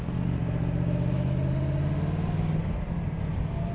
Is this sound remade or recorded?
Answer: recorded